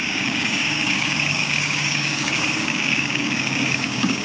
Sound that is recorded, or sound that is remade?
remade